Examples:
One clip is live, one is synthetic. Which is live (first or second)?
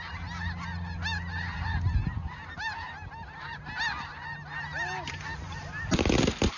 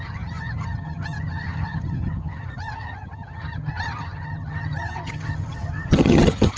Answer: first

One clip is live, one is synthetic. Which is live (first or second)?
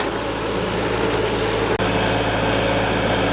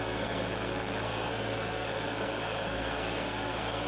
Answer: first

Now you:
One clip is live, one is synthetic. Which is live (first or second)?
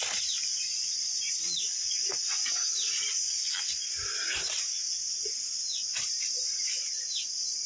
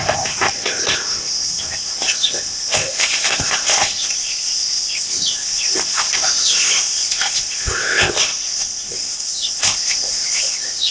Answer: first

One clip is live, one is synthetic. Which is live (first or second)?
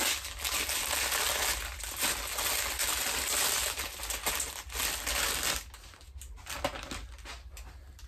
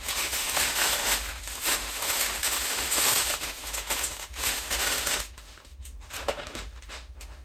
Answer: first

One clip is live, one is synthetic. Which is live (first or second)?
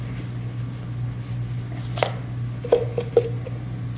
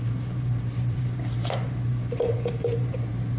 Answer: first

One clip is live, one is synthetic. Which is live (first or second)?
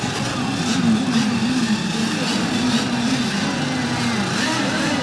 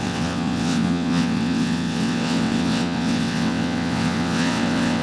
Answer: first